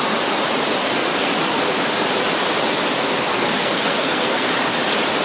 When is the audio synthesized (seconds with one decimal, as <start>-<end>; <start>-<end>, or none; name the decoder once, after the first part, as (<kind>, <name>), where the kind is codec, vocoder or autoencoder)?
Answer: 0.8-1.3 (codec, SNAC); 3.3-4.5